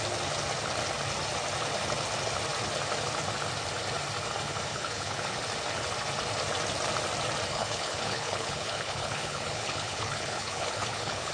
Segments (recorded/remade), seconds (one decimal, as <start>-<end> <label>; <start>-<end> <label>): 0.0-4.7 recorded; 4.7-5.4 remade; 5.4-7.5 recorded; 7.5-11.3 remade